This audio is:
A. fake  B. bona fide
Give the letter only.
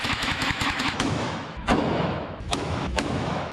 A